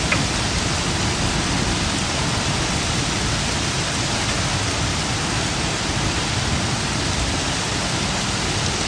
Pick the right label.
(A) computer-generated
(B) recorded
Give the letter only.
B